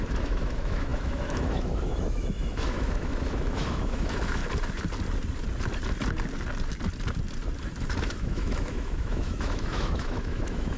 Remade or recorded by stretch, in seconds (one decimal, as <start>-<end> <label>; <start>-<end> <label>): 0.0-4.4 remade; 4.4-8.0 recorded; 8.0-10.8 remade